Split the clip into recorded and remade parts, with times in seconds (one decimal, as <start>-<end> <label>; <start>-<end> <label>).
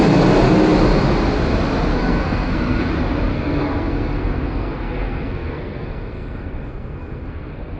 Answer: 0.0-1.9 recorded; 1.9-2.9 remade; 2.9-3.3 recorded; 3.3-7.8 remade